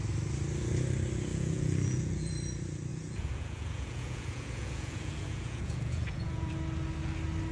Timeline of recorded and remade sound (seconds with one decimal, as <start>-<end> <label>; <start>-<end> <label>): 0.0-1.3 recorded; 1.3-2.3 remade; 2.3-2.9 recorded; 2.9-6.5 remade; 6.5-7.5 recorded